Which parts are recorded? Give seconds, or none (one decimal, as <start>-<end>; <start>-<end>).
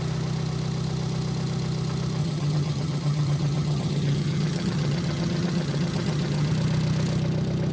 0.0-2.2; 6.5-7.7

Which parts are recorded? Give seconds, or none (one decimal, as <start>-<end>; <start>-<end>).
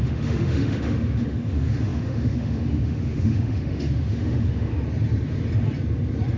4.7-6.4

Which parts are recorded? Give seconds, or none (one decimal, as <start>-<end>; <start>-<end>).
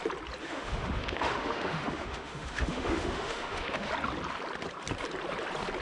0.0-0.4; 3.9-5.8